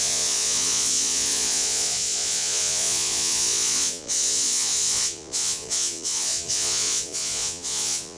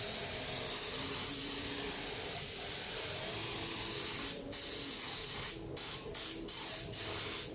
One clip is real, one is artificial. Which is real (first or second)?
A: second